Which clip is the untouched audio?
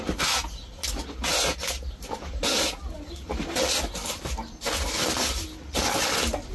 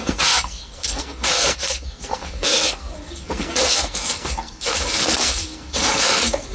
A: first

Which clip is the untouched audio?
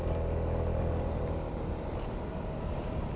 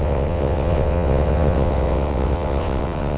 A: first